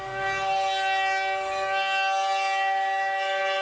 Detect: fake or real real